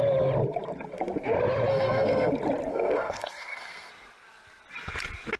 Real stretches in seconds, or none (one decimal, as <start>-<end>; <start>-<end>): 0.0-1.7; 2.3-2.7; 3.9-5.4